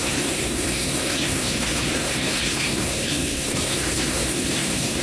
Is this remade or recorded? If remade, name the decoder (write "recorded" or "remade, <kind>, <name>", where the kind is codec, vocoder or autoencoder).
remade, codec, SNAC